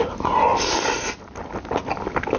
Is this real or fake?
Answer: real